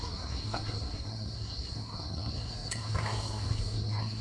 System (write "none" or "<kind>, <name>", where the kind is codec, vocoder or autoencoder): codec, SNAC